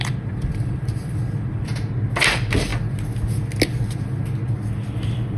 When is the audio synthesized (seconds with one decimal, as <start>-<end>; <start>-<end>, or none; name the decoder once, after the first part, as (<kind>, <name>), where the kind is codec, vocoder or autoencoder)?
0.0-1.7 (vocoder, BigVGAN v2); 2.2-2.7